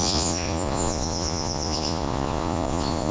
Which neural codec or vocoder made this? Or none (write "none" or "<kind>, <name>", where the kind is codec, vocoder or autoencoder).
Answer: vocoder, Vocos